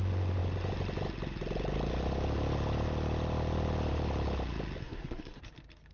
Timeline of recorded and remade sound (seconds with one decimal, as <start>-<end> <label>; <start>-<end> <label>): 0.0-4.8 recorded; 4.8-5.4 remade; 5.4-5.9 recorded

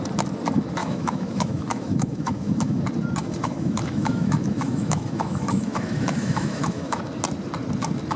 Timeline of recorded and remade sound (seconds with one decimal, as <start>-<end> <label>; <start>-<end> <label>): 0.0-0.8 recorded; 0.8-2.8 remade; 2.8-3.2 recorded; 3.2-7.0 remade; 7.0-8.2 recorded

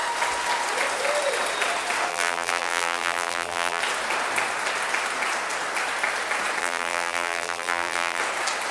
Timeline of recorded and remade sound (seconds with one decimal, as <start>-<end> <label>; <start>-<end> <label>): 0.0-2.1 recorded; 2.1-3.8 remade; 3.8-6.6 recorded; 6.6-8.2 remade; 8.2-8.7 recorded

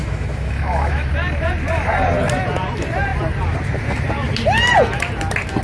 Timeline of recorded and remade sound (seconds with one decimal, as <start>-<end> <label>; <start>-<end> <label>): 0.0-1.1 remade; 1.1-5.6 recorded

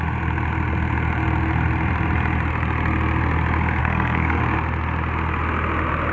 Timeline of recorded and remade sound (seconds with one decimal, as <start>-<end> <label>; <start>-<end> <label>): 0.0-3.8 recorded; 3.8-4.4 remade; 4.4-6.1 recorded